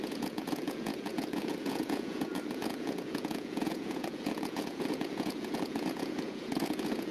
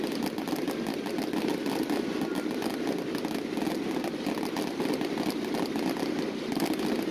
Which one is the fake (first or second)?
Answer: first